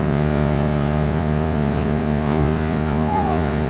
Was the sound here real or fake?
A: fake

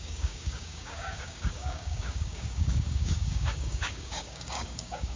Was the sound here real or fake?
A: fake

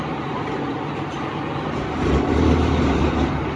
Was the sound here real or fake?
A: real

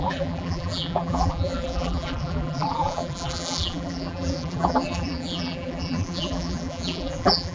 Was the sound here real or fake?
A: fake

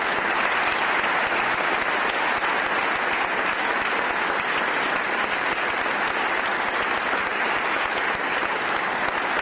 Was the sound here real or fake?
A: real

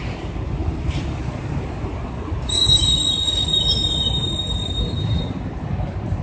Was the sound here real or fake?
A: fake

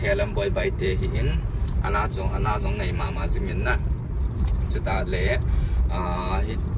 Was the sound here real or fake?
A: fake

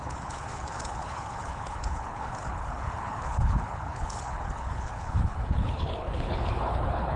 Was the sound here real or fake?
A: fake